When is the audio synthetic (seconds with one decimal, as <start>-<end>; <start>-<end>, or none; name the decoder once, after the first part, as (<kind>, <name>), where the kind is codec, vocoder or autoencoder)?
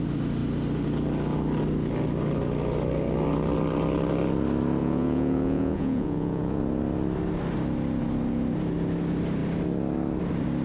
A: 4.8-6.6 (vocoder, Vocos)